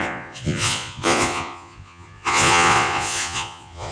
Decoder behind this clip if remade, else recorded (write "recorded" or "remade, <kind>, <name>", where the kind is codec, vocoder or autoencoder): remade, vocoder, Vocos